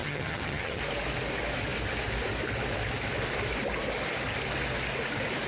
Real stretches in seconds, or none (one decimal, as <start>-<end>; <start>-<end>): 0.8-5.5